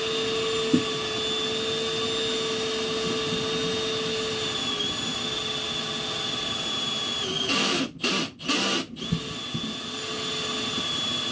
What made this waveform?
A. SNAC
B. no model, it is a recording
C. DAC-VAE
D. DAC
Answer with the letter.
B